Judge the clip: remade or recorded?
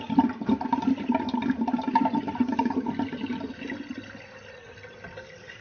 recorded